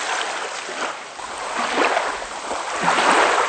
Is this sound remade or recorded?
recorded